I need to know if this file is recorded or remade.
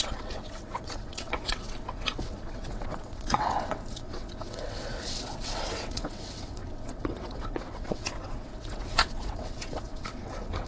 remade